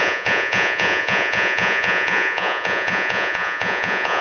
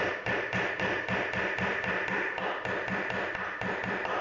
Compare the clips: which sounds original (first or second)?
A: second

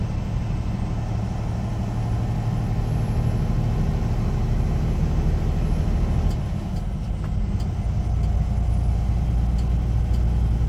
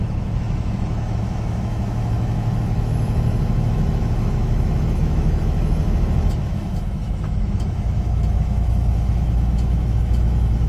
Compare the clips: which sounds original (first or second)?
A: first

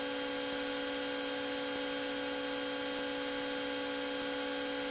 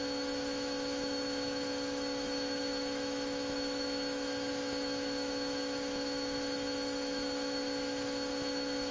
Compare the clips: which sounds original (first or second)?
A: first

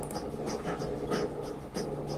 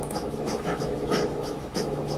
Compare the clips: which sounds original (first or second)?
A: first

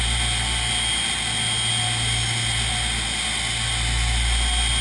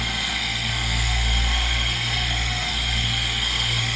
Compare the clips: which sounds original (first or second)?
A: first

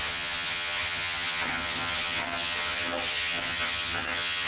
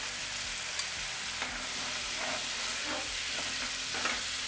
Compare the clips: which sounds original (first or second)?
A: second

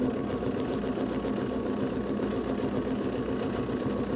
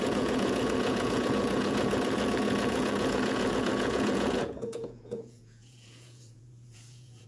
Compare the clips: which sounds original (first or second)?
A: first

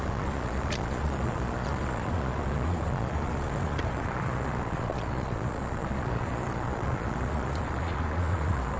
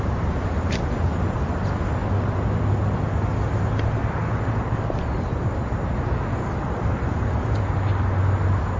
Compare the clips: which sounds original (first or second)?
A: second